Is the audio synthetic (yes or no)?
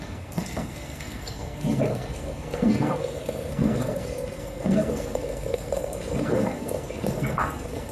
yes